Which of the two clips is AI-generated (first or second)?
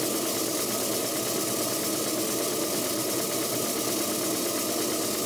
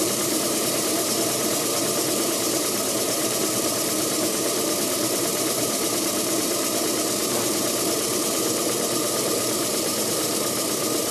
second